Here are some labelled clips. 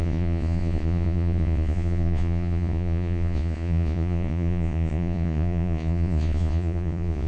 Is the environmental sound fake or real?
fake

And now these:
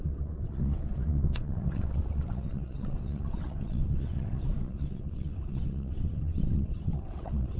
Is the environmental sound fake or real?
fake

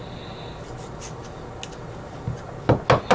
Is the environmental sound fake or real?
real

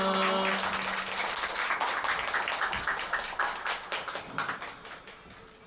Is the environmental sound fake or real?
real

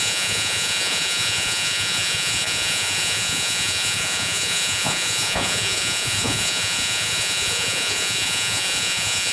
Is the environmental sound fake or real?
fake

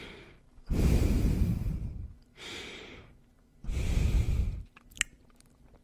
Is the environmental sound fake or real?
fake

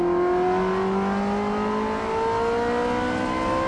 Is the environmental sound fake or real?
real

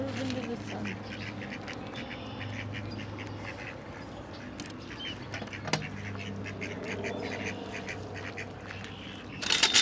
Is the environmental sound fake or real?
real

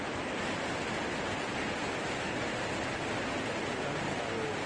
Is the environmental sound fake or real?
real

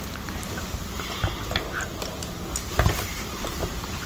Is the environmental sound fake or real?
fake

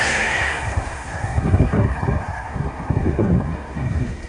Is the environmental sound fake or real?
fake